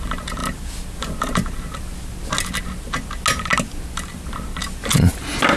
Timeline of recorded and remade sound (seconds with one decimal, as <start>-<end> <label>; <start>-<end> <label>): 0.0-5.6 recorded